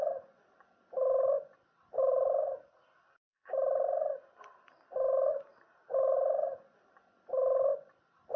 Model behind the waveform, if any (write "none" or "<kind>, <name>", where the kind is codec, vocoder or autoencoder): none